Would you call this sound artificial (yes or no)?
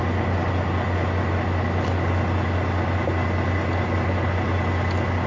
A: no